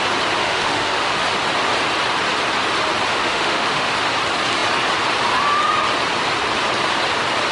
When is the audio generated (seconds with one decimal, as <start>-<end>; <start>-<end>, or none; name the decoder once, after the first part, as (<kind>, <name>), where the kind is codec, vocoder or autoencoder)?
0.4-1.1 (autoencoder, DAC-VAE); 3.1-3.9